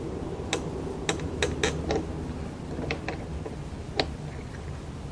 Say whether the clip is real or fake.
real